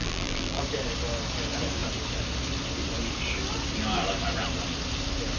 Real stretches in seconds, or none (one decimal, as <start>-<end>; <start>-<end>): 0.6-5.4

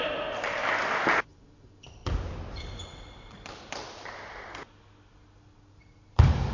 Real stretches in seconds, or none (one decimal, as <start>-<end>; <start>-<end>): 0.6-1.2; 2.0-5.6